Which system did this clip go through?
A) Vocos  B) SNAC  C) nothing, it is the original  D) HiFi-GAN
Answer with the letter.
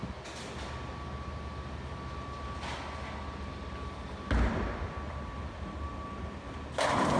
C